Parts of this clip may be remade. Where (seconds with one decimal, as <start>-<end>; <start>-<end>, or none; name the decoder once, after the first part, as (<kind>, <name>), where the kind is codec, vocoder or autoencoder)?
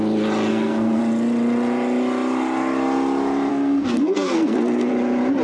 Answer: 0.5-1.0 (codec, SNAC); 3.5-4.9